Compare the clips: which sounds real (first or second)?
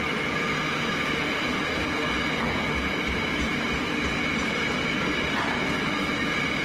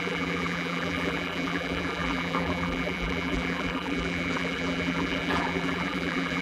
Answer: first